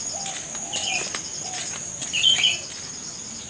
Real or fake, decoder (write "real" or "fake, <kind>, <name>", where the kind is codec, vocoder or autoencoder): real